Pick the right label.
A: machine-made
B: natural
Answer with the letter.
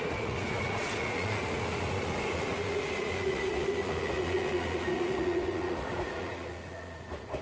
A